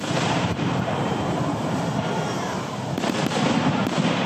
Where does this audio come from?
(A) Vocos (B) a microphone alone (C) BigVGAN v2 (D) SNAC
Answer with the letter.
C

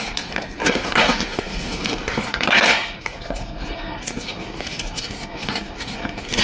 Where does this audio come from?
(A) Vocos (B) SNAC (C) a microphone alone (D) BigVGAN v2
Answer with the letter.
B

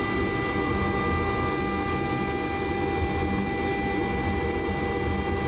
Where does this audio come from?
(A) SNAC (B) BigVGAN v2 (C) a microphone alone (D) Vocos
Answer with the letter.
C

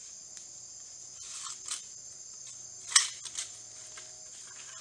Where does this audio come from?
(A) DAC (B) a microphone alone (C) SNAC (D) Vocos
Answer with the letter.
B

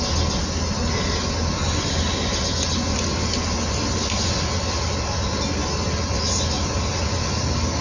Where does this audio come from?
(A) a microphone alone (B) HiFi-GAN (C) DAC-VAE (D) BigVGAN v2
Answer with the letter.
A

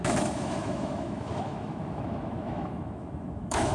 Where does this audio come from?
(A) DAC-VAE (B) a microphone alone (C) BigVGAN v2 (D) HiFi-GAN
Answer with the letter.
A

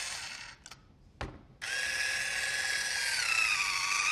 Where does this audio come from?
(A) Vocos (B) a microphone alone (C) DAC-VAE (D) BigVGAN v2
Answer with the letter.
B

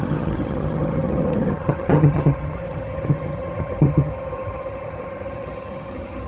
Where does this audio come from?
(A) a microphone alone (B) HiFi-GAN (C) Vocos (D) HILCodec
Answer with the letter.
B